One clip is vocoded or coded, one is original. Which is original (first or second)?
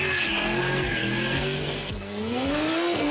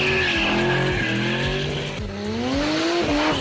second